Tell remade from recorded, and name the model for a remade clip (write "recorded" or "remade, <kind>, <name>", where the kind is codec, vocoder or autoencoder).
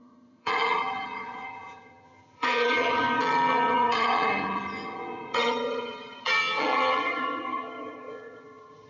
remade, vocoder, HiFi-GAN